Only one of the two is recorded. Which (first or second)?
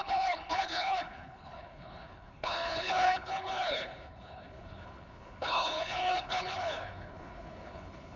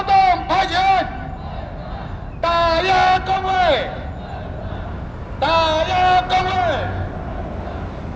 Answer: second